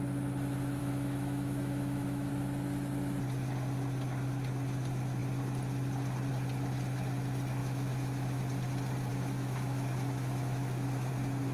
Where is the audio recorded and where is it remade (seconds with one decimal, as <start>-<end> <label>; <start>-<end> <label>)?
0.0-0.8 recorded; 0.8-2.3 remade; 2.3-7.6 recorded; 7.6-8.4 remade; 8.4-9.1 recorded; 9.1-11.1 remade; 11.1-11.5 recorded